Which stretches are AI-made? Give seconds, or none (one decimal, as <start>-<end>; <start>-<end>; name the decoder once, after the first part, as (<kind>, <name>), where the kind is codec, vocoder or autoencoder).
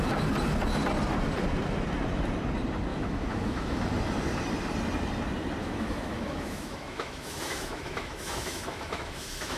2.9-3.8 (autoencoder, DAC-VAE); 5.6-9.6